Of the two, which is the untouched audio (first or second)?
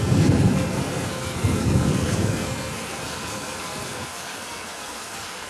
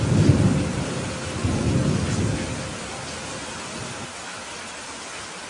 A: second